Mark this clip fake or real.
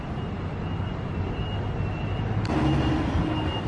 real